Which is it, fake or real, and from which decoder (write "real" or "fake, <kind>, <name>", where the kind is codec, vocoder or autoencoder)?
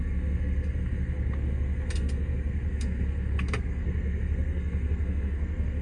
fake, codec, SNAC